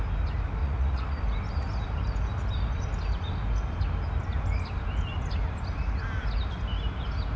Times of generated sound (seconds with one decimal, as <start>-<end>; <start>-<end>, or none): 0.6-1.2